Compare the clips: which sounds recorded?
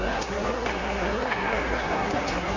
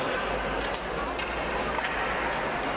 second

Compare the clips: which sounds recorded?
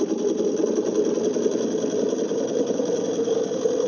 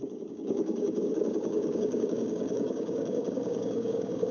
first